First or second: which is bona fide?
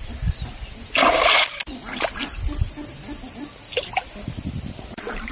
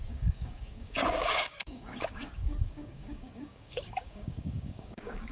first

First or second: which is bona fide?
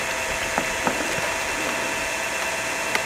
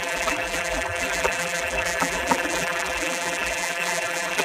first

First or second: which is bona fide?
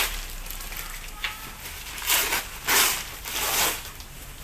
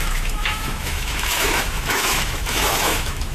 first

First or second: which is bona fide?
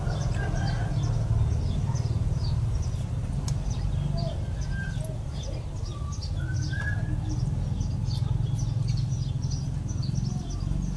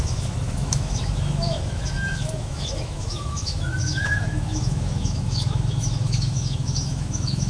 first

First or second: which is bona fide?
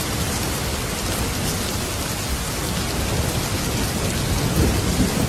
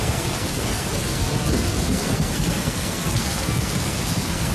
first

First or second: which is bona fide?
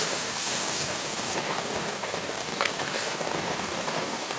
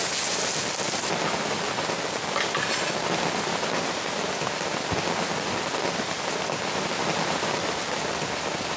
second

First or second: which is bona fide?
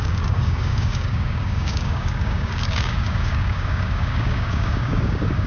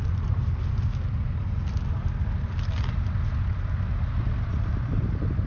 second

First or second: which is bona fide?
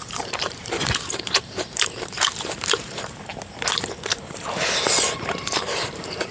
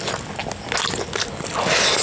second